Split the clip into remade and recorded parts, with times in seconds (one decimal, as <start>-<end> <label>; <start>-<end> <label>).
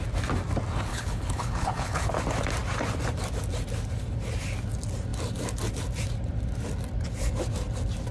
0.0-0.9 recorded; 0.9-2.1 remade; 2.1-8.1 recorded